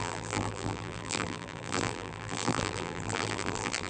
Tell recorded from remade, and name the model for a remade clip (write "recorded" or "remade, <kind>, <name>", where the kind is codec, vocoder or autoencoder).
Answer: remade, vocoder, BigVGAN v2